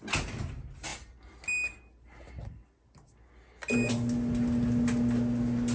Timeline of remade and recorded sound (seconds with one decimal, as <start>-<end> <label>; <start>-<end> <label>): 0.0-5.7 recorded